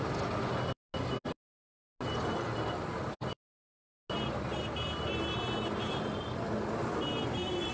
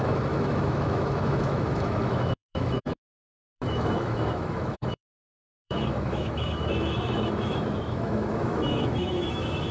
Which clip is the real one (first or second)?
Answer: first